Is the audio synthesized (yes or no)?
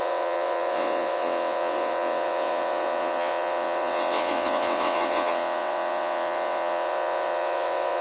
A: yes